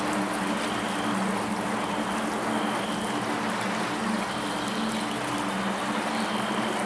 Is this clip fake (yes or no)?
no